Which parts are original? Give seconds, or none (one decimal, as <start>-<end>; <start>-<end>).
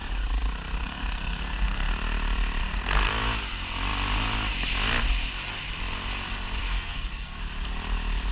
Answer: 0.0-0.8; 1.9-2.6; 3.1-6.6; 7.4-8.3